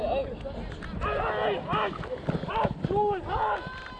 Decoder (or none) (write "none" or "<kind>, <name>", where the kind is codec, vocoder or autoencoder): none